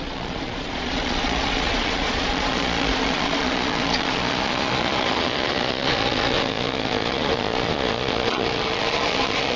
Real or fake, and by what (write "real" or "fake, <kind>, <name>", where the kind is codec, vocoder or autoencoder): fake, vocoder, Vocos